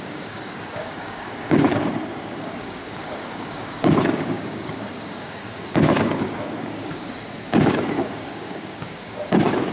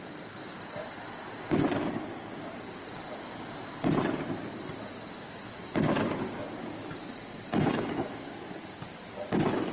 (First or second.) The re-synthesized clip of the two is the first